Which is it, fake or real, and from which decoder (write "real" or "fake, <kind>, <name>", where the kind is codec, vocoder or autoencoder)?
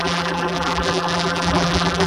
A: fake, vocoder, BigVGAN v2